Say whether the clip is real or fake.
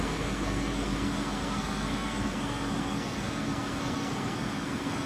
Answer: fake